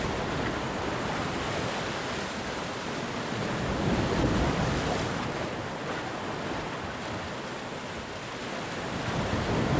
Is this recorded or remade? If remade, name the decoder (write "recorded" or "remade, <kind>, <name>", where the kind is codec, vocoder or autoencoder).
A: recorded